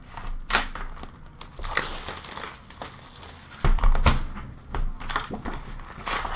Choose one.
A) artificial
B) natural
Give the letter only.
B